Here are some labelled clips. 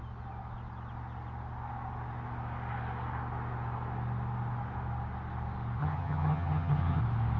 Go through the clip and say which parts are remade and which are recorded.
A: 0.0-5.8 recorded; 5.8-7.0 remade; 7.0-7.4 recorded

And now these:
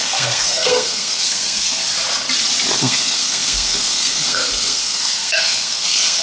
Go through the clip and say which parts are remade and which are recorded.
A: 0.0-1.8 remade; 1.8-2.8 recorded; 2.8-6.2 remade

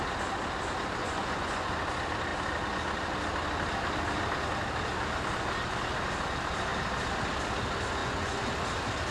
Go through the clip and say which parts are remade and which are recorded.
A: 0.0-1.0 recorded; 1.0-1.7 remade; 1.7-8.0 recorded; 8.0-8.5 remade; 8.5-9.1 recorded